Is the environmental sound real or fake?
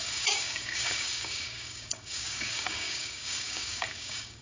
fake